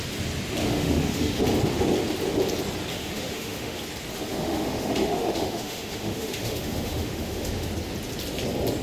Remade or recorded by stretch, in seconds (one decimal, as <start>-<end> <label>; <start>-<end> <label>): 0.0-0.6 recorded; 0.6-1.4 remade; 1.4-2.9 recorded; 2.9-3.8 remade; 3.8-4.3 recorded; 4.3-7.7 remade; 7.7-8.8 recorded